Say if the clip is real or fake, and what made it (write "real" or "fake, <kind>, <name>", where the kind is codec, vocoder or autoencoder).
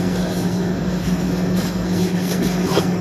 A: fake, codec, SNAC